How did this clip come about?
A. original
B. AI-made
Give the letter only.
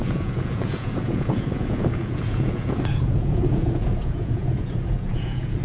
B